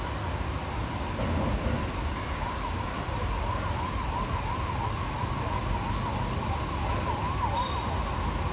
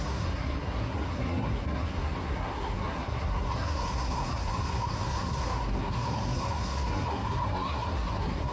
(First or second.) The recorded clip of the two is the first